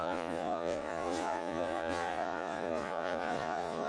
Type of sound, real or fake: fake